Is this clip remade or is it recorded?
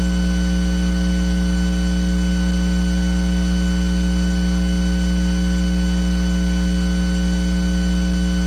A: recorded